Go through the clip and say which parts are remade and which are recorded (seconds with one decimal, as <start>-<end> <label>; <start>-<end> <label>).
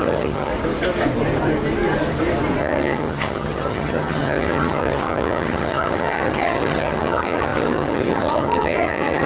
0.0-0.5 remade; 0.5-2.6 recorded; 2.6-9.3 remade